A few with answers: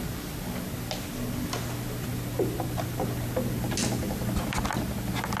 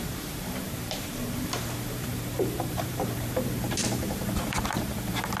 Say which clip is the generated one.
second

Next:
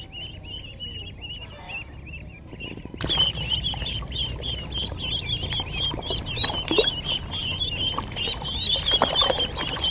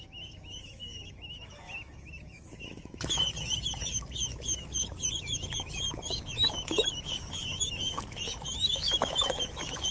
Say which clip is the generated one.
second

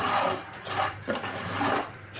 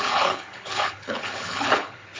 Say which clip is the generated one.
second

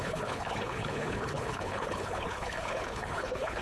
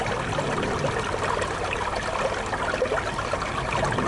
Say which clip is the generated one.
first